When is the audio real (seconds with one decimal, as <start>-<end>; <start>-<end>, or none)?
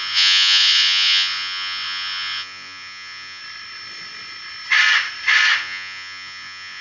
3.4-5.6